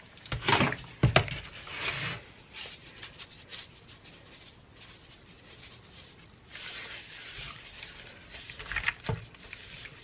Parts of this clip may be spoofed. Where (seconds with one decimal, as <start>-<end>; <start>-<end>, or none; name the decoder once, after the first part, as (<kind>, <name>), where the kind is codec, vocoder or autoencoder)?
none